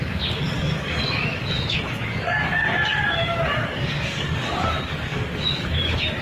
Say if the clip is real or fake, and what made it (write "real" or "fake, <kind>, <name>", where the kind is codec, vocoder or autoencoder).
fake, codec, DAC